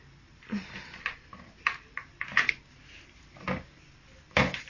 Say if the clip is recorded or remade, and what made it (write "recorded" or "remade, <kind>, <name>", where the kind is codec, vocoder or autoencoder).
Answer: recorded